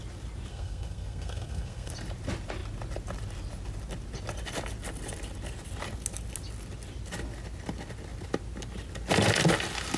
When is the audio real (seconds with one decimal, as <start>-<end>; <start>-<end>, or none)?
0.0-0.5; 1.9-10.0